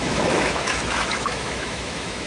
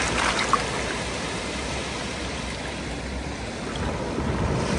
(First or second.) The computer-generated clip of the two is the first